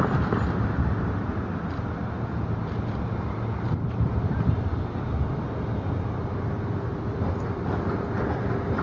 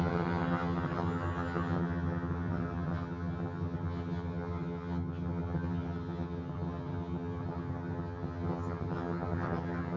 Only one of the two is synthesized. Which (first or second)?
second